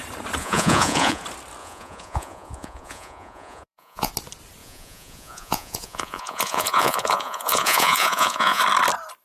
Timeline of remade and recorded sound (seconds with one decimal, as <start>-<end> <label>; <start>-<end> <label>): 0.0-0.4 recorded; 0.4-1.2 remade; 1.2-1.6 recorded; 1.6-4.1 remade; 4.1-4.6 recorded; 4.6-8.6 remade; 8.6-9.2 recorded